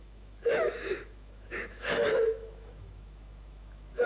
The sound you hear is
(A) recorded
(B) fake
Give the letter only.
B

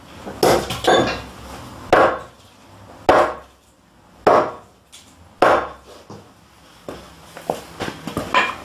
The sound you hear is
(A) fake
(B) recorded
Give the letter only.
B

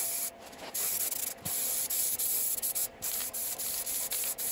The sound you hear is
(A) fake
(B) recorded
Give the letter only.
B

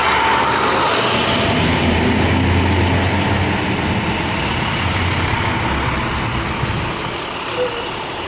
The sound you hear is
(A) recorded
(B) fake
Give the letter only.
A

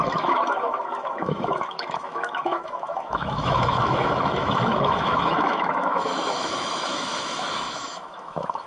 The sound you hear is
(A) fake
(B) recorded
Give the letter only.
A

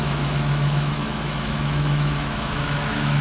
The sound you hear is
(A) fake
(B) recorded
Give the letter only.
A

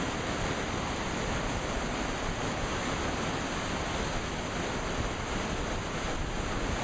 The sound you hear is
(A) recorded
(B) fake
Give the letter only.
A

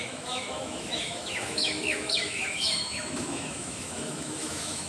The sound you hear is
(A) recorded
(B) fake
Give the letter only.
B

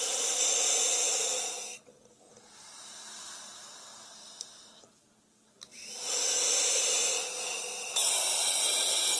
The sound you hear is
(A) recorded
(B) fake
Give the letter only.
A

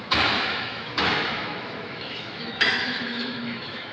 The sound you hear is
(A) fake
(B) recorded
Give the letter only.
A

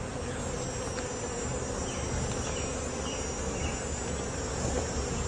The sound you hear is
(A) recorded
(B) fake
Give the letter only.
A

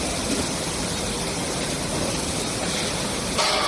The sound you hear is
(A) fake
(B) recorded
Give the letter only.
B